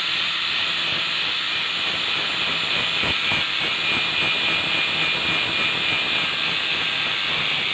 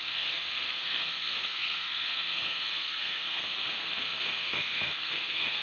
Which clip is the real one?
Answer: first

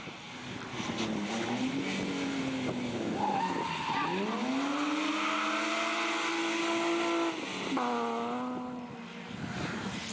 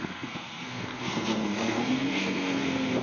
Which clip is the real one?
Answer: first